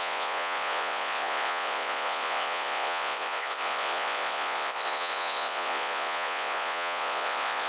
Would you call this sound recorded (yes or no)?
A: no